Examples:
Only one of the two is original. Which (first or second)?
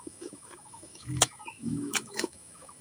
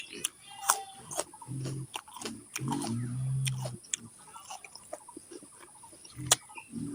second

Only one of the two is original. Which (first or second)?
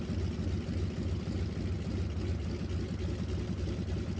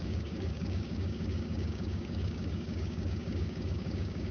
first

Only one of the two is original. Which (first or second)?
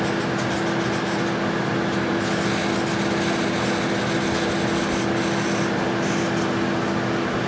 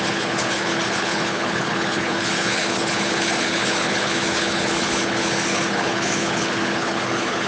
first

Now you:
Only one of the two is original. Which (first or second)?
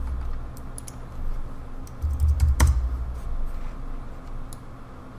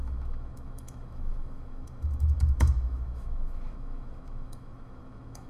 first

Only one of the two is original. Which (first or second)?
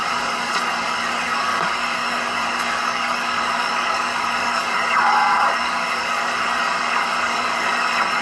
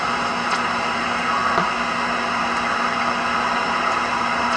second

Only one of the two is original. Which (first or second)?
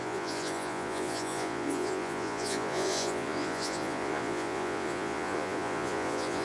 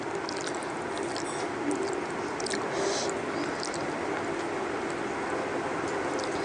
second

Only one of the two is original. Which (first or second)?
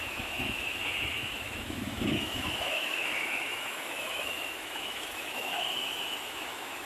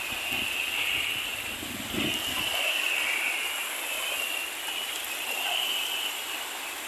second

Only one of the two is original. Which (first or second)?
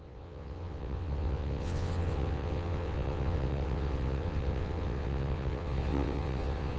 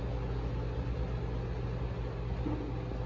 second